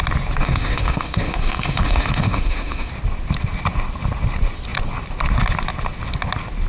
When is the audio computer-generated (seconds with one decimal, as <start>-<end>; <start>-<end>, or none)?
0.4-2.9